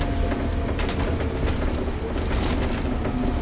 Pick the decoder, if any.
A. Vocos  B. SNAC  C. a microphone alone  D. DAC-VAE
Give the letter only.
C